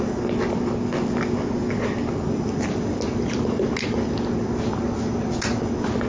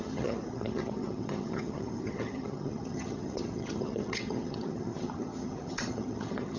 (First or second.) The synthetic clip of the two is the second